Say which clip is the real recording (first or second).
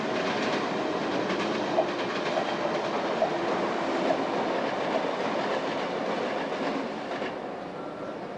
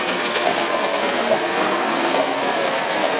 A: first